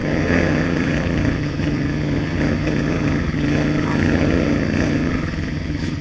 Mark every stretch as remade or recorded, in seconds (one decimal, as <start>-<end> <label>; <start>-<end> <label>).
0.0-6.0 remade